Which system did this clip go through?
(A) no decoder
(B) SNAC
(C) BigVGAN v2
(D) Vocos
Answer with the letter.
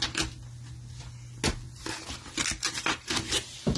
A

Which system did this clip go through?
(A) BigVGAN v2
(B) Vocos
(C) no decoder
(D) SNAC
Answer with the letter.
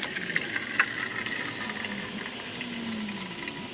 C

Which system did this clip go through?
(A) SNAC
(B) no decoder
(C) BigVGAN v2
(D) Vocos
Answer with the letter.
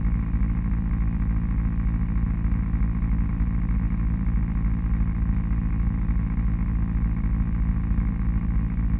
B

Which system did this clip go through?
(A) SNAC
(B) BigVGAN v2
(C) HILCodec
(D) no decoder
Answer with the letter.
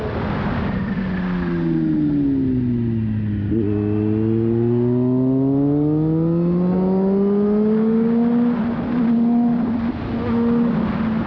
D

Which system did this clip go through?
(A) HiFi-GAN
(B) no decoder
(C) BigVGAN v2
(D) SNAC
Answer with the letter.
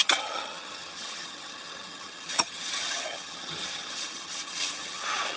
A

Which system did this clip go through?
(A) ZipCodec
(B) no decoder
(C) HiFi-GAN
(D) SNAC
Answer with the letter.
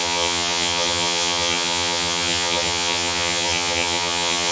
C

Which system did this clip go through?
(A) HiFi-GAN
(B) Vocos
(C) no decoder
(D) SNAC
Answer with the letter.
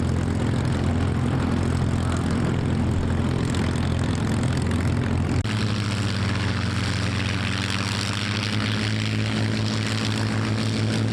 C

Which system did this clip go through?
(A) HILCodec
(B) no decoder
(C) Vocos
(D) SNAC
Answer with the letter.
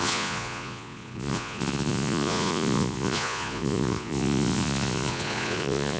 C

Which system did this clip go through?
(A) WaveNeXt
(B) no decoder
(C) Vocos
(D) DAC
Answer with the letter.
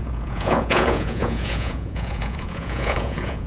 C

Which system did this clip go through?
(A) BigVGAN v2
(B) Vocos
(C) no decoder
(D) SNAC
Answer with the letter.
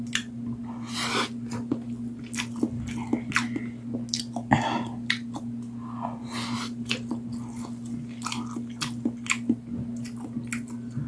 C